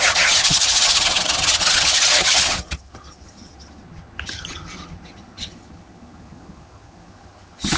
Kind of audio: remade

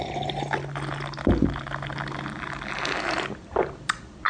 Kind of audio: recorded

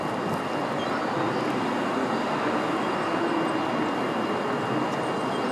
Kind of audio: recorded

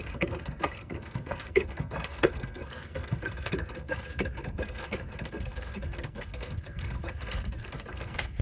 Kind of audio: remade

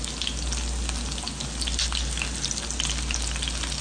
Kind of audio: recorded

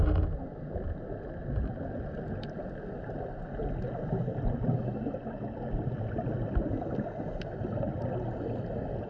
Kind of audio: recorded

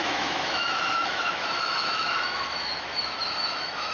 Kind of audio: remade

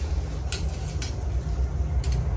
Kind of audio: recorded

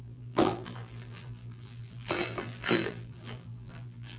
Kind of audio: remade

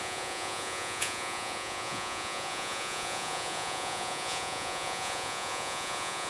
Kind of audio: remade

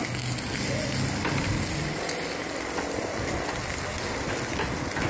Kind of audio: recorded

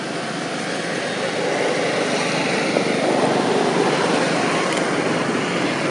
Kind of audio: recorded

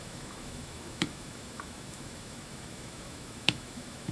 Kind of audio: remade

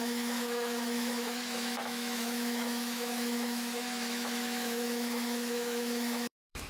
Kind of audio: remade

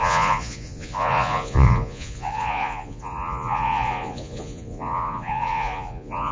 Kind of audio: remade